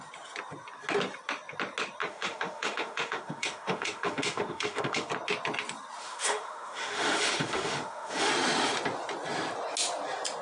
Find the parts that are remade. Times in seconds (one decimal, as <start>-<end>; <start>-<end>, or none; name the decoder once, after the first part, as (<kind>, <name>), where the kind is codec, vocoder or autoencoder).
2.0-5.1 (autoencoder, DAC-VAE); 6.0-8.3